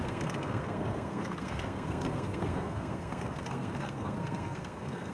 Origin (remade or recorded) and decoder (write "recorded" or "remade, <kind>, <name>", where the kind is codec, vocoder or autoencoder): remade, codec, SNAC